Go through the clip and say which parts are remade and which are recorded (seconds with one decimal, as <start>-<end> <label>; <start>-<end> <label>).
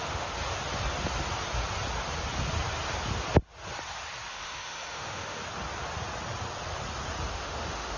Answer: 0.0-0.4 remade; 0.4-4.3 recorded; 4.3-5.4 remade; 5.4-7.3 recorded; 7.3-8.0 remade